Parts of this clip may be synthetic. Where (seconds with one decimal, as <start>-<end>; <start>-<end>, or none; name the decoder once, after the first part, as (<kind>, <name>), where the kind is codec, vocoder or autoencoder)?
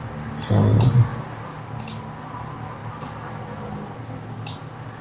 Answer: none